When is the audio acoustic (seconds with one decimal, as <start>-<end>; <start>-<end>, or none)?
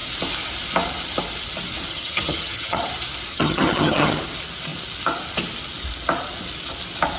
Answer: 0.0-1.9; 2.9-3.3; 4.2-7.2